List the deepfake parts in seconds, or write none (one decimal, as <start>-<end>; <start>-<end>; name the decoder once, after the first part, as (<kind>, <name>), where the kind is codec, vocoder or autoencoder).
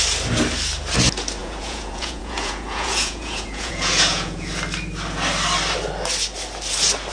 1.4-4.5 (vocoder, Vocos)